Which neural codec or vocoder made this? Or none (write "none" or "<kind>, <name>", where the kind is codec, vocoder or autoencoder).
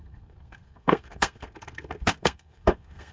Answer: codec, SNAC